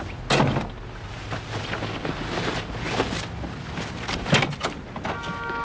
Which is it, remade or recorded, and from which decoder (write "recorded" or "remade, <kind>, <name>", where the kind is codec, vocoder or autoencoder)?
recorded